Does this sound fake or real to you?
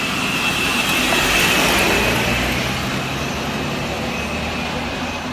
real